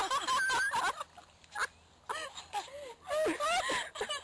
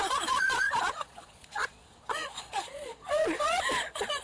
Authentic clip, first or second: first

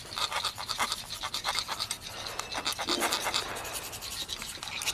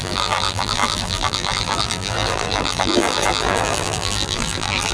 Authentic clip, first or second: first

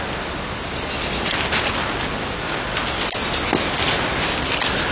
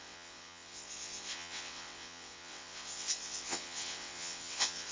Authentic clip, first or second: first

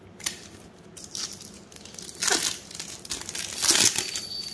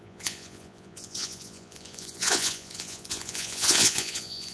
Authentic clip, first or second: first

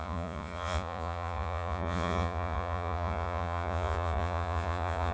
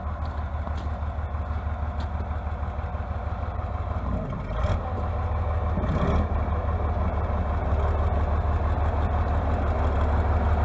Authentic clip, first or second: second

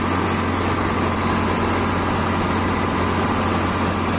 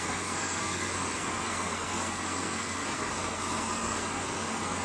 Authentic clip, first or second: first